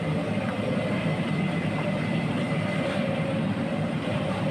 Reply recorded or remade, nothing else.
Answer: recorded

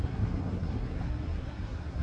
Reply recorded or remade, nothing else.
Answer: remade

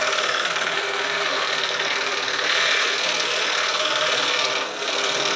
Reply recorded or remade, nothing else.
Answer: remade